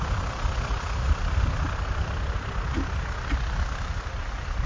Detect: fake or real real